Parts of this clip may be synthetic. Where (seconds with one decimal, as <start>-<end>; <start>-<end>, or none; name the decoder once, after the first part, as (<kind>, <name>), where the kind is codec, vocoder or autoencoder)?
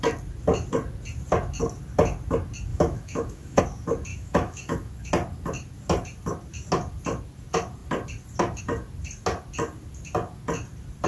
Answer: 2.7-3.6 (autoencoder, DAC-VAE); 4.1-4.9